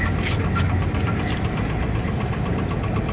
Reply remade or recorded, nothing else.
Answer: recorded